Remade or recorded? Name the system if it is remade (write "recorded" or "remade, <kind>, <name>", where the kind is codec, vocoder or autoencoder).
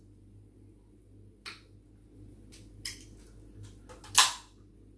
recorded